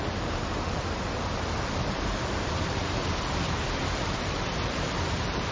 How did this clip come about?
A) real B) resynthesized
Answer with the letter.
B